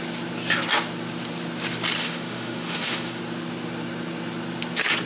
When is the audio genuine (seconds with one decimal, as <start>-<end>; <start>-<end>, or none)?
0.0-2.0; 3.2-5.1